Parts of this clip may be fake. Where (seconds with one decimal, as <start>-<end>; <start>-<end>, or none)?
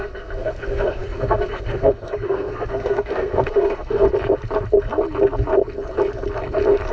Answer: 0.0-4.1